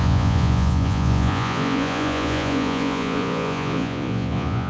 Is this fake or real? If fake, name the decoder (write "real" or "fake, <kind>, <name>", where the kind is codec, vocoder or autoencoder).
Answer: fake, vocoder, Vocos